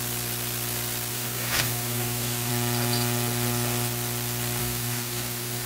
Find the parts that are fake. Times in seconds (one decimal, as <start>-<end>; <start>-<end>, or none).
1.1-2.5; 4.6-5.7